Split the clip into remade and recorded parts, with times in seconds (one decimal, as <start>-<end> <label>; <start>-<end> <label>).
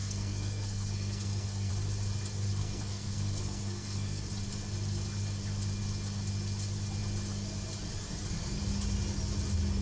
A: 0.0-1.7 remade; 1.7-2.6 recorded; 2.6-4.2 remade; 4.2-9.8 recorded